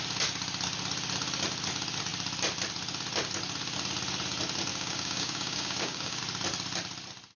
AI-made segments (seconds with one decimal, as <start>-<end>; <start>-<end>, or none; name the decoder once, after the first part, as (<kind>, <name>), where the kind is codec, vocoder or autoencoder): 4.7-6.2 (codec, DAC)